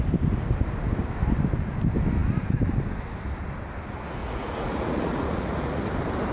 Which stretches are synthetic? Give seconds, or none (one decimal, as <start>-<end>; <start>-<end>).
4.2-5.8